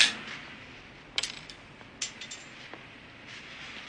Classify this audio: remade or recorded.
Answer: recorded